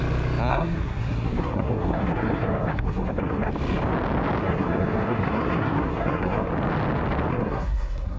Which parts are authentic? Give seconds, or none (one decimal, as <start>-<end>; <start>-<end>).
0.0-0.5; 3.5-4.4; 6.5-7.3